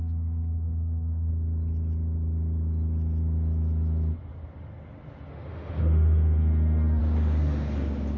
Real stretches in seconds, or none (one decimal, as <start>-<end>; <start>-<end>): 1.3-5.3; 7.0-8.2